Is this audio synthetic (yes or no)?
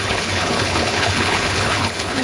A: yes